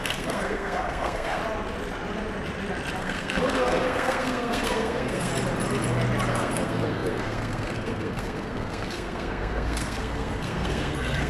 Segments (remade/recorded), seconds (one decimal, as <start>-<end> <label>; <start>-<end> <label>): 0.0-1.4 remade; 1.4-3.0 recorded; 3.0-5.3 remade; 5.3-6.3 recorded; 6.3-11.3 remade